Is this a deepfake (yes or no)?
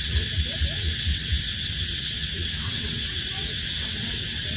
yes